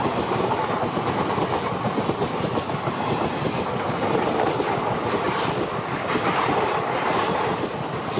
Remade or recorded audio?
recorded